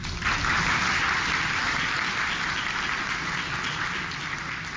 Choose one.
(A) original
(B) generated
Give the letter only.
A